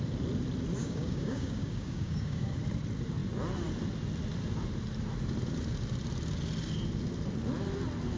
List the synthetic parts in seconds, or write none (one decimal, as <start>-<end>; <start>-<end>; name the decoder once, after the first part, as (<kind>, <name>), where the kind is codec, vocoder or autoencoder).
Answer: 0.8-2.6 (codec, DAC)